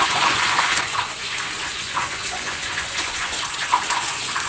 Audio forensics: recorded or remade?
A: remade